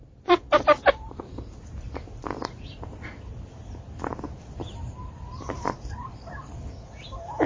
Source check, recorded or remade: remade